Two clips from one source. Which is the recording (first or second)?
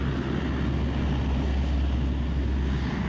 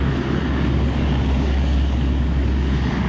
first